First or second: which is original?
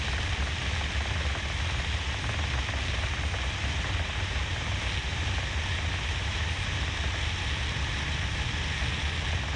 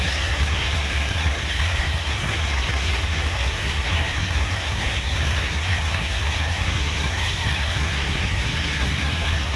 first